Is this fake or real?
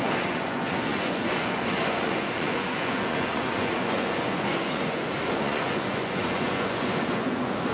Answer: fake